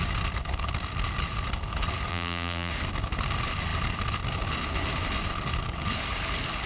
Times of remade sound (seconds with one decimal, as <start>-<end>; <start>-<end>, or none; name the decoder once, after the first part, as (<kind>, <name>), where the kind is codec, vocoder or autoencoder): 2.1-2.7 (vocoder, BigVGAN v2)